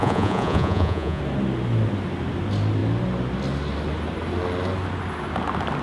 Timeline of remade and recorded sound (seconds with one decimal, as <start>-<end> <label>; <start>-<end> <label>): 0.0-1.2 remade; 1.2-5.8 recorded